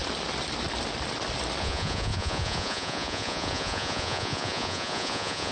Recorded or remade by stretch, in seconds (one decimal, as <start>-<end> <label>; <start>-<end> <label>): 0.0-1.6 recorded; 1.6-5.5 remade